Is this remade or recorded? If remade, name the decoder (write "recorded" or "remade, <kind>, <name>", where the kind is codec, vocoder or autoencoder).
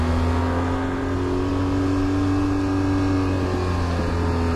recorded